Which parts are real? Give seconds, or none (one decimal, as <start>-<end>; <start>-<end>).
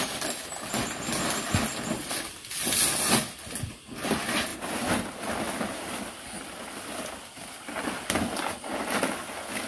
0.0-9.7